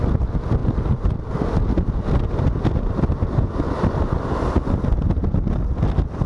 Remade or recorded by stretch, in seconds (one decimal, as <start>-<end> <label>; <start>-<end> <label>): 0.0-6.3 recorded